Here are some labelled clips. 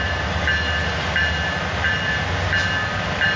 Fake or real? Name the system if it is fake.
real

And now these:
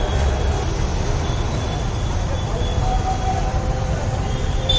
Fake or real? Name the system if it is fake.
fake, vocoder, BigVGAN v2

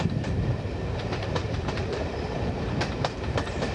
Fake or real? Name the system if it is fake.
fake, vocoder, BigVGAN v2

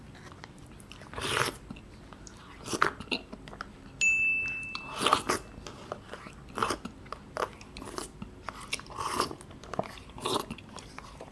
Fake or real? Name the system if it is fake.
real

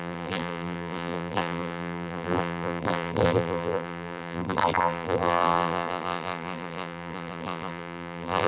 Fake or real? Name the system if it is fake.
fake, vocoder, BigVGAN v2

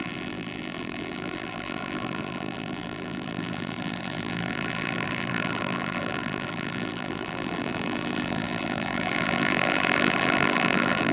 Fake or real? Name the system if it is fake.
fake, vocoder, BigVGAN v2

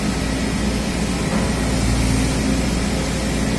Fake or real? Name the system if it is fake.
real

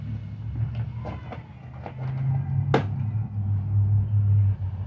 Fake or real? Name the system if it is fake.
real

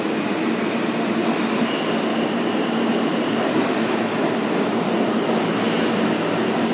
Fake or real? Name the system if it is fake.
real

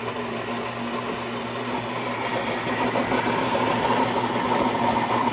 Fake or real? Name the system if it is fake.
real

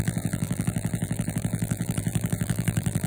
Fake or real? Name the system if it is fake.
fake, vocoder, BigVGAN v2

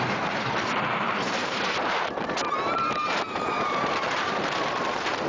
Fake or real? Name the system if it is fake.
fake, vocoder, BigVGAN v2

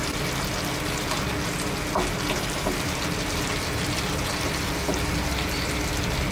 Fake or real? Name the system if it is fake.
real